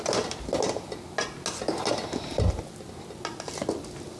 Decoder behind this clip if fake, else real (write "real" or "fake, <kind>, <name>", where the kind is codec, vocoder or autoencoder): real